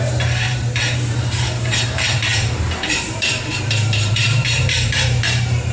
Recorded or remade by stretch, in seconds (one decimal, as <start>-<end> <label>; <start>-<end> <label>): 0.0-5.7 remade